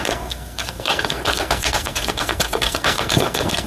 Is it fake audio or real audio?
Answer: fake